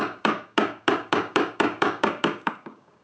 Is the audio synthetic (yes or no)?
yes